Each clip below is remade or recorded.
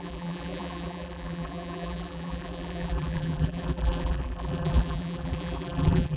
remade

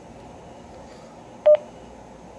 recorded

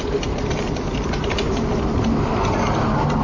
recorded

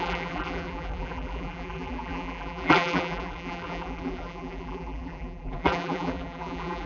remade